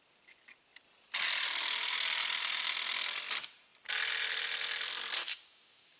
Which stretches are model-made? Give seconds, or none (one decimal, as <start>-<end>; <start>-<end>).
5.2-6.0